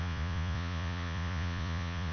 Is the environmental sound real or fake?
fake